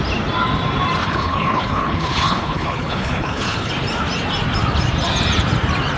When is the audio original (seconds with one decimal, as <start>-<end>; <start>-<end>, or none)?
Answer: 0.0-1.0; 3.7-6.0